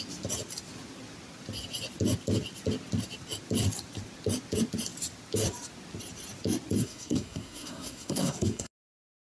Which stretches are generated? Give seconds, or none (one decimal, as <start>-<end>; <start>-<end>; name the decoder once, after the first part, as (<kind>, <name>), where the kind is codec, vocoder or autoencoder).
6.8-8.7 (codec, SNAC)